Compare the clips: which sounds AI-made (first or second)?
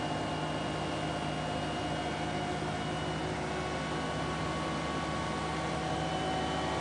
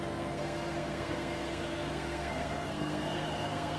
second